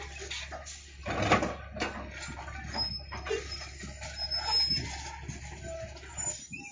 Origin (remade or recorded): recorded